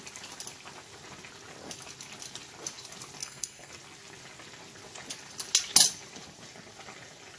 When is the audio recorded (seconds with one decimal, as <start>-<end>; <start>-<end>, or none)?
0.0-3.2; 3.7-7.4